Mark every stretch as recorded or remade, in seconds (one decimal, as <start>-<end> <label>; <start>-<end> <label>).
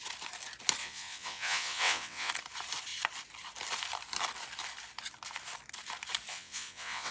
0.0-0.8 recorded; 0.8-2.3 remade; 2.3-6.3 recorded; 6.3-7.1 remade